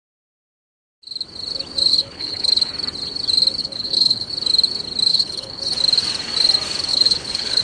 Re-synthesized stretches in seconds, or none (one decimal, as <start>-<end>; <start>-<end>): 1.9-2.7; 3.6-4.3; 5.1-5.6; 6.9-7.6